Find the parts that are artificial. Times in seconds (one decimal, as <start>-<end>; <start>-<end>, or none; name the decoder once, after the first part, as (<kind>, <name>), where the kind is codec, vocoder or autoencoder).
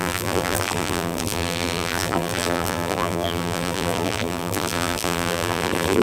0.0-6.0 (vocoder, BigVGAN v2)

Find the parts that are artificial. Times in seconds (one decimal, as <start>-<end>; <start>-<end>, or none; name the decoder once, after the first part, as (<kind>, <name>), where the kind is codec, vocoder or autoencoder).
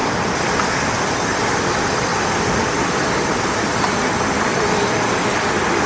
0.0-1.7 (vocoder, BigVGAN v2); 4.0-4.5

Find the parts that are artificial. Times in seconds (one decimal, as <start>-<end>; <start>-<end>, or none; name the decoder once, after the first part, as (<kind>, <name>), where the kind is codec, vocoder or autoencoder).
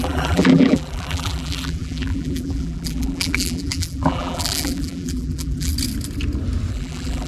0.0-5.7 (vocoder, BigVGAN v2); 6.7-7.3